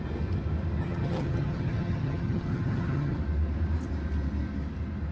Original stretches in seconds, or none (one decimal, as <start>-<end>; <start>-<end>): 0.0-0.8; 3.2-5.1